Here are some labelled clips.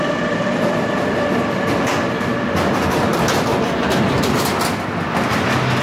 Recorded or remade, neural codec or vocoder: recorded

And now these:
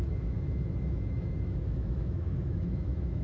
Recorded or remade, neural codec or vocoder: remade, autoencoder, DAC-VAE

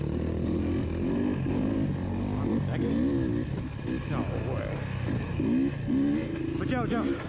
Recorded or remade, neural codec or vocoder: recorded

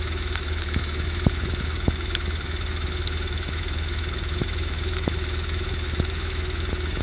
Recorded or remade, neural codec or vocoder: remade, autoencoder, DAC-VAE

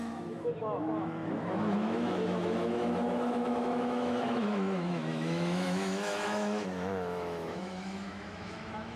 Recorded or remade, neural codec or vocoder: remade, autoencoder, DAC-VAE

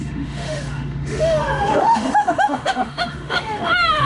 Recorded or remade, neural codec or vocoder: remade, autoencoder, DAC-VAE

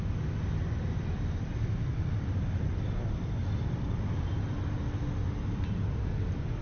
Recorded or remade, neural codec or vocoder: recorded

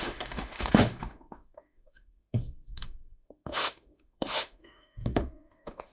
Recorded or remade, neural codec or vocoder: remade, autoencoder, DAC-VAE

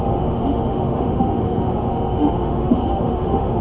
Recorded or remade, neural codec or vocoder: remade, autoencoder, DAC-VAE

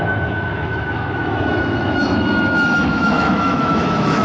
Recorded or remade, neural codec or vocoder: remade, autoencoder, DAC-VAE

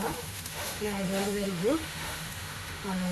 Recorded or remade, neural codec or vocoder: remade, autoencoder, DAC-VAE